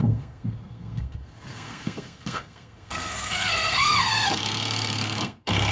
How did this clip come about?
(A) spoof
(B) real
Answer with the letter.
A